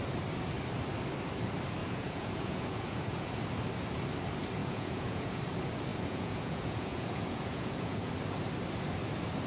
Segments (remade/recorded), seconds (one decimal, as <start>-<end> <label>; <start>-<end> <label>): 0.0-1.8 recorded; 1.8-3.3 remade; 3.3-4.6 recorded; 4.6-5.4 remade; 5.4-5.9 recorded; 5.9-8.1 remade; 8.1-9.5 recorded